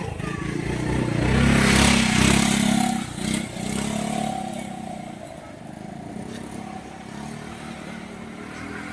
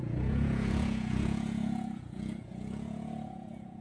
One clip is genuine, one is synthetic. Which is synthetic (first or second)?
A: second